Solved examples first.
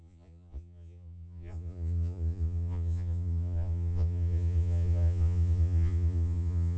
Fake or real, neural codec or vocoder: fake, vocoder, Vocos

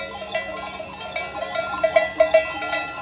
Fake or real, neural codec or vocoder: real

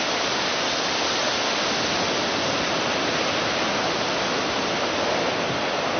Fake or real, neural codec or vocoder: real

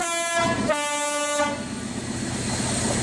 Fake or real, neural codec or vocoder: real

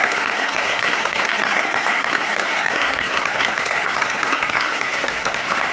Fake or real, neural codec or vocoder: fake, codec, SNAC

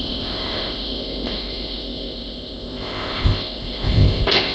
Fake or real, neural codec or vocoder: fake, codec, ZipCodec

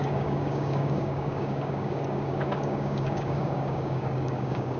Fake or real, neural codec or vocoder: fake, codec, DAC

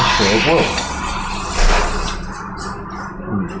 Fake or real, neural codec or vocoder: real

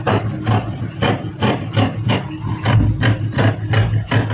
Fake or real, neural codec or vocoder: real